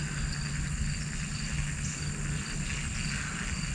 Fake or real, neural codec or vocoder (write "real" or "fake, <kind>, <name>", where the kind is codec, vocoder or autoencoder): real